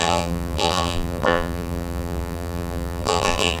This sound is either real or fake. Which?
fake